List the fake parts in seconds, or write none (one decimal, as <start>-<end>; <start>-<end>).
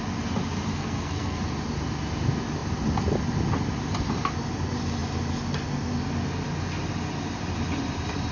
0.7-1.4